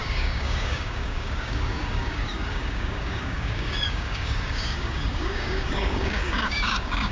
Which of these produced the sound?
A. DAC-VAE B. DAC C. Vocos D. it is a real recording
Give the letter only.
B